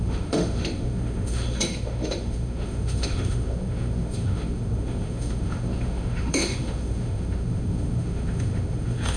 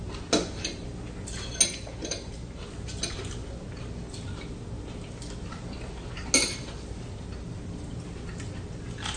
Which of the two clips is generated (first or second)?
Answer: first